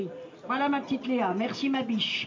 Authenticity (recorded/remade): recorded